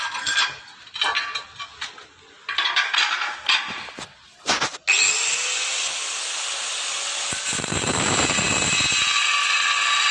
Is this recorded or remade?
recorded